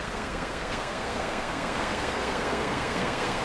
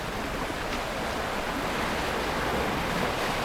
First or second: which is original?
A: second